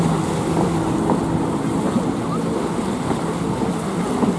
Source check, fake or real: real